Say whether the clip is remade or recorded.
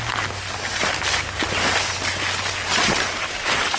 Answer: recorded